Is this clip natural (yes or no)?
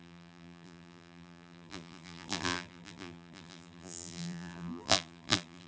no